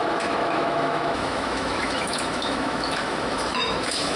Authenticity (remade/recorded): remade